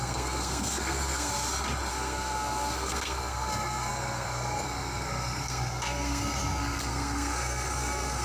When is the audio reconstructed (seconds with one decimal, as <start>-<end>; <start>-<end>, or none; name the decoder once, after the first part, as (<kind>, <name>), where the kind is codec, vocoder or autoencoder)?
0.0-1.3 (codec, SNAC); 1.9-8.2